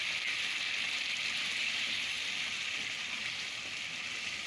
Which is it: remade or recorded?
recorded